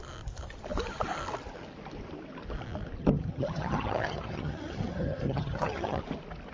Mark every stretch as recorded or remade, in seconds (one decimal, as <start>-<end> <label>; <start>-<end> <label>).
0.0-3.0 recorded; 3.0-6.0 remade; 6.0-6.5 recorded